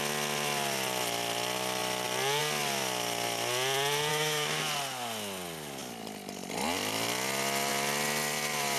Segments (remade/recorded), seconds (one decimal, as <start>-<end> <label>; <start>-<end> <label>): 0.0-4.1 recorded; 4.1-4.6 remade; 4.6-8.8 recorded

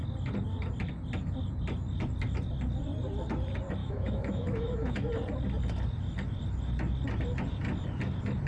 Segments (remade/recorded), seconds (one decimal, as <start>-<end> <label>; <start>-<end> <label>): 0.0-3.8 recorded; 3.8-5.1 remade; 5.1-8.5 recorded

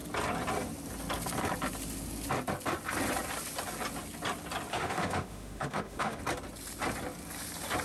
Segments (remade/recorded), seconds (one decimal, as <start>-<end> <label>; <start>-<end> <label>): 0.0-4.7 recorded; 4.7-6.2 remade; 6.2-7.8 recorded